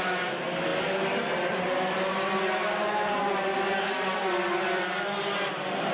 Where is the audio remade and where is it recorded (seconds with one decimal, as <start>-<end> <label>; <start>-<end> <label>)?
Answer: 0.0-5.9 recorded